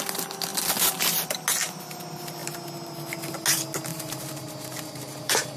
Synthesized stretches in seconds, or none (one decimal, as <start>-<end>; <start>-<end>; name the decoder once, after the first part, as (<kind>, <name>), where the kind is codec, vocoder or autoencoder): 3.9-5.6 (vocoder, BigVGAN v2)